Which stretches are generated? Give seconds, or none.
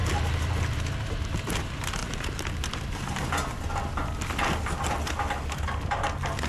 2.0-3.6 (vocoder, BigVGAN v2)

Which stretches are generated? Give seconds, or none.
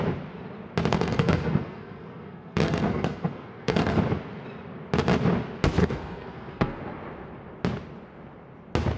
0.9-4.0 (codec, SNAC); 5.8-6.8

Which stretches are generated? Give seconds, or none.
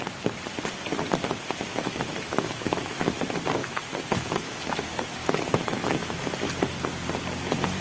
1.7-3.2 (autoencoder, DAC-VAE); 3.6-4.5; 5.2-6.3